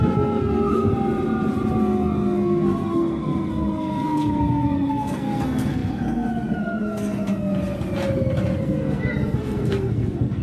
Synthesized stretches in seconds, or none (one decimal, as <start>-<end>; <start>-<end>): 0.0-0.9; 1.8-7.5; 8.6-10.4